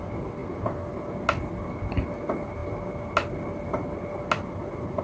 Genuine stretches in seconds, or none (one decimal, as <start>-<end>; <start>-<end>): 0.0-5.0